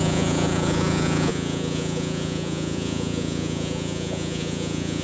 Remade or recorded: remade